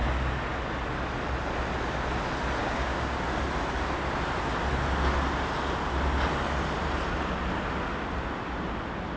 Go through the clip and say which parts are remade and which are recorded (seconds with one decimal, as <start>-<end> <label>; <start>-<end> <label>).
0.0-2.6 recorded; 2.6-3.2 remade; 3.2-9.2 recorded